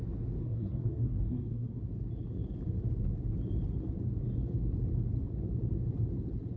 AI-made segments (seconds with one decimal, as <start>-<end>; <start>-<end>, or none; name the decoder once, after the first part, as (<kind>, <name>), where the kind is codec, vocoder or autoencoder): 0.4-1.8 (codec, SNAC)